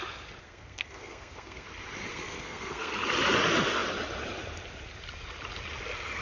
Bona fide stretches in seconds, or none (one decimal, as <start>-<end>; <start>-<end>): 0.0-0.4; 1.7-2.1; 2.9-6.2